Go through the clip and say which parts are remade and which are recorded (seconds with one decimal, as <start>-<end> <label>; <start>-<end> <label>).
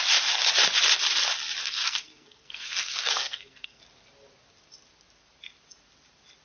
0.0-1.6 recorded; 1.6-3.8 remade; 3.8-6.4 recorded